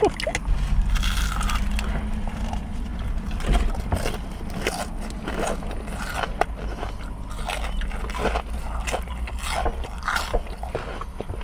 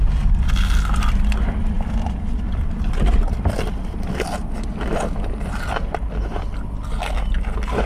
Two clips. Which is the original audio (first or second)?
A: first